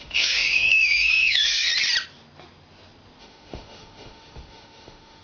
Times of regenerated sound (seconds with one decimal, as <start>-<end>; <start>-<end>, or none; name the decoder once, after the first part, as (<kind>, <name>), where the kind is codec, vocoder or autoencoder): 0.0-1.7 (autoencoder, DAC-VAE); 3.2-5.2

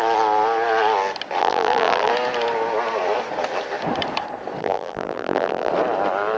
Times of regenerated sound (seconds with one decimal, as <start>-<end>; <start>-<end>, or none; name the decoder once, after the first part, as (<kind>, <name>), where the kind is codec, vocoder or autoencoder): 1.4-2.1 (vocoder, BigVGAN v2); 4.6-5.7

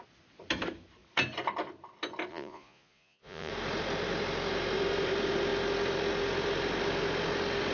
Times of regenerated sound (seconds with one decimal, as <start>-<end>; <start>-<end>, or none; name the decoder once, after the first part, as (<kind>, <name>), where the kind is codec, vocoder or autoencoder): 2.3-3.5 (vocoder, Vocos)

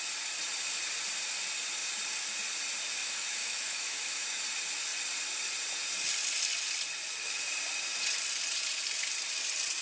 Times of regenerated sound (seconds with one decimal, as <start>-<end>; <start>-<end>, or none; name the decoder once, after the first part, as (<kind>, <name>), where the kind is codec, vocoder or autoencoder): 3.0-4.4 (autoencoder, DAC-VAE)

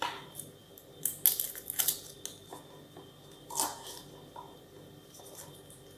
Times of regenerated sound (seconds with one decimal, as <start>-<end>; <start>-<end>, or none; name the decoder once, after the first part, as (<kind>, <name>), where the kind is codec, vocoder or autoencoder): none

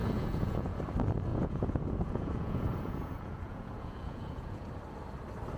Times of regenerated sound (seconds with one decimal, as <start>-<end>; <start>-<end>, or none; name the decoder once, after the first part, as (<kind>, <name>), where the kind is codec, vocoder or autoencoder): 0.0-0.8 (vocoder, Vocos); 1.3-4.7